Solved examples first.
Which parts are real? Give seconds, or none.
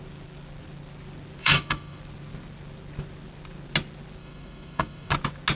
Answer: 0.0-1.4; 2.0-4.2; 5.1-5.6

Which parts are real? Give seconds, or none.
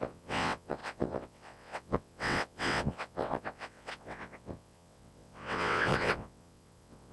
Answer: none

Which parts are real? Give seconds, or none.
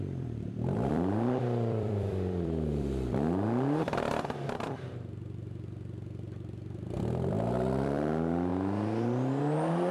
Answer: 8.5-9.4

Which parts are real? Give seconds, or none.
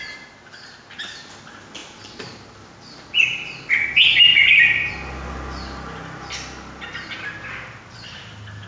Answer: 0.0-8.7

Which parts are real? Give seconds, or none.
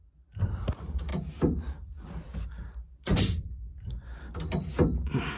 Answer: 0.0-1.1; 4.3-5.4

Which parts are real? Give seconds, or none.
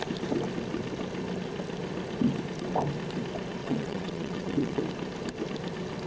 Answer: 0.0-3.6; 4.8-6.1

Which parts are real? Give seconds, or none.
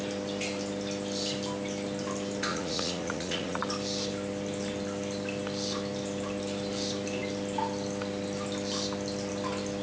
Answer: 0.0-2.5; 3.6-9.8